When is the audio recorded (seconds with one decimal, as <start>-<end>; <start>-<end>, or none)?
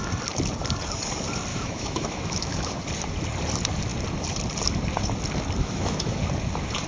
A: 0.0-1.5; 2.8-5.6; 6.2-6.9